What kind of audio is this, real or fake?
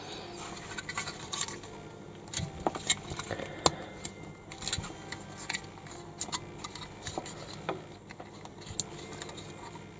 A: real